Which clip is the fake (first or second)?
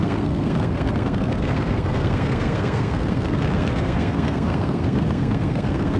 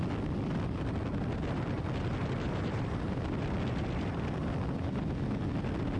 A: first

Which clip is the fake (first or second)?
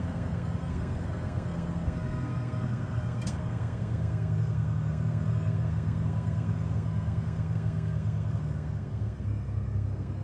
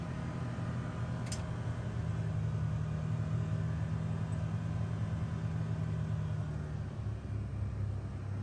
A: first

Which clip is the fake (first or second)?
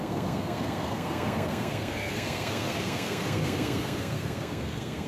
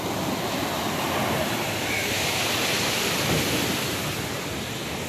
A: first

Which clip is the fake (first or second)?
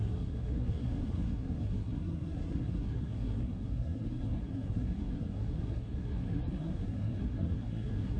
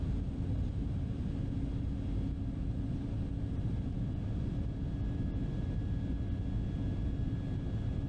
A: first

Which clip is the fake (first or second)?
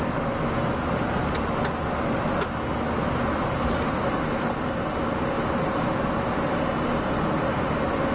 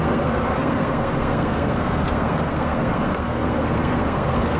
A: second